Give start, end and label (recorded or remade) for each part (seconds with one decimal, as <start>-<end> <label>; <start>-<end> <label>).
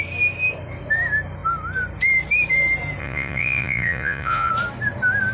0.0-3.0 recorded; 3.0-4.5 remade; 4.5-5.3 recorded